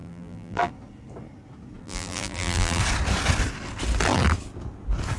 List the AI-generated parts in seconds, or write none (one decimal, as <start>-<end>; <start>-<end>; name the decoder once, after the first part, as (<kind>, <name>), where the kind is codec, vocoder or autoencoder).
0.0-0.7 (vocoder, BigVGAN v2); 1.8-2.8